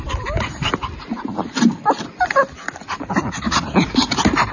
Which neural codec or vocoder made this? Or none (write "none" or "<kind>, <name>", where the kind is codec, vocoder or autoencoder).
none